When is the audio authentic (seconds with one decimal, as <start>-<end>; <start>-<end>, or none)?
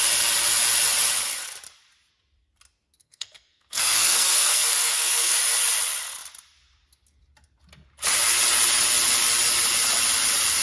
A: 0.0-3.0; 5.4-10.6